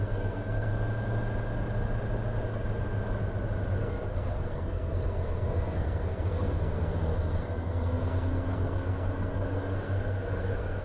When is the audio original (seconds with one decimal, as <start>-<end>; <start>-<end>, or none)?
0.7-3.8